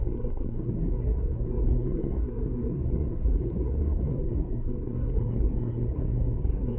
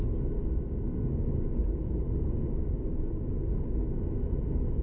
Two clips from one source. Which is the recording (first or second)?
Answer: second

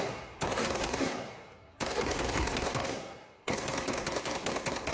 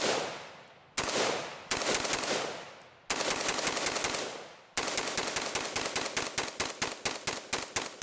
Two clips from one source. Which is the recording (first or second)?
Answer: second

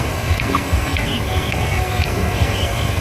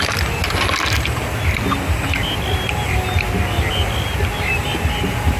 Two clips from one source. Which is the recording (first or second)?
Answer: second